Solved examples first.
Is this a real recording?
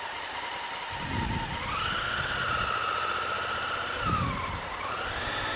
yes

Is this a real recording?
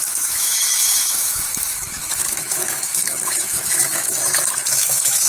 no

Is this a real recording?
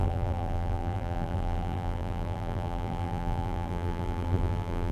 no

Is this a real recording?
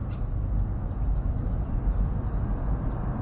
yes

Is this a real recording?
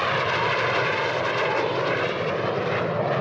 yes